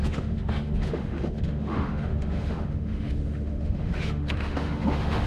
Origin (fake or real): fake